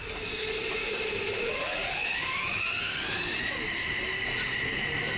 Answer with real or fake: real